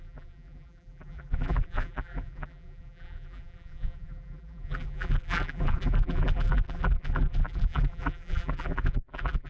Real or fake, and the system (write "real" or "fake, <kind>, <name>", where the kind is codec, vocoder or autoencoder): fake, vocoder, BigVGAN v2